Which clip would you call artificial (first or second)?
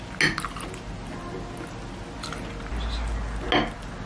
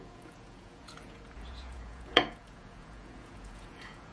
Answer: second